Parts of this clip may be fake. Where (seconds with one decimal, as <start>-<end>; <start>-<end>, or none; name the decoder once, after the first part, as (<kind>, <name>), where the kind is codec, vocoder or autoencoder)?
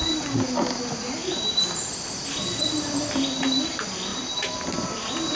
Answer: 1.2-2.6 (vocoder, BigVGAN v2); 4.1-5.3